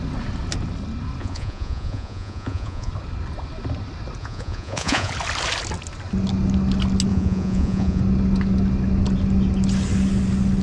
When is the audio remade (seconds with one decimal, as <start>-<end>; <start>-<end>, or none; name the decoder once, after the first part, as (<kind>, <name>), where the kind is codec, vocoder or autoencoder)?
1.2-2.9 (vocoder, Vocos); 4.2-5.1; 7.1-8.0